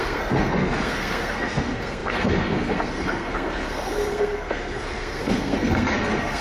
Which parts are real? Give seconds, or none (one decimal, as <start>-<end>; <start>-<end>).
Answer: none